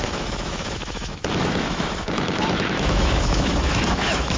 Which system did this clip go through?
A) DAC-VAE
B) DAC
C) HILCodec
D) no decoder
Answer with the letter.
A